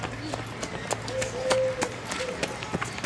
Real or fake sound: real